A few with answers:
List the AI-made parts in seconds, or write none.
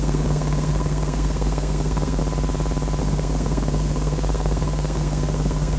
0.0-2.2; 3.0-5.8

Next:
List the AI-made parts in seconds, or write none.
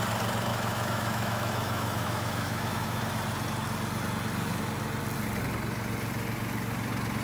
0.5-3.0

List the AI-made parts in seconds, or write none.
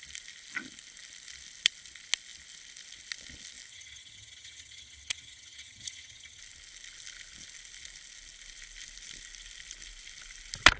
3.7-6.4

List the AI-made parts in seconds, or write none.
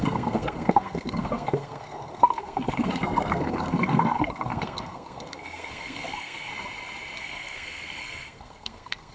0.0-6.5; 7.2-9.1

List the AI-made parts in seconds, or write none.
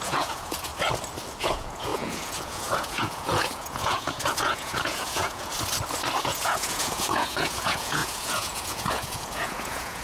0.0-0.7; 1.4-5.5; 6.2-10.0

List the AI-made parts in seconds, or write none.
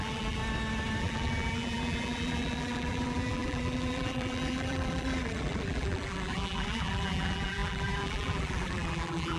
0.0-0.4; 1.0-9.4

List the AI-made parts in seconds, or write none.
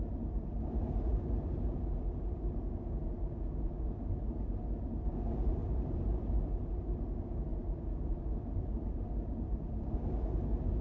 1.1-1.7; 5.6-6.8; 7.5-10.1